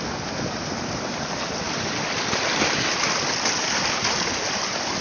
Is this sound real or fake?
real